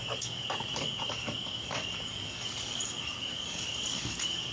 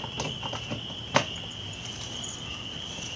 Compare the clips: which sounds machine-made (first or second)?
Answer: first